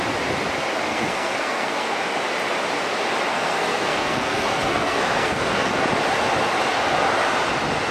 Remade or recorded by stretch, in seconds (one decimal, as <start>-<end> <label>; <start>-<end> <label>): 0.0-0.9 recorded; 0.9-1.9 remade; 1.9-3.3 recorded; 3.3-5.7 remade; 5.7-7.9 recorded